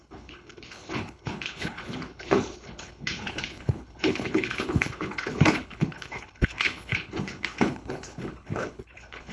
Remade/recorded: remade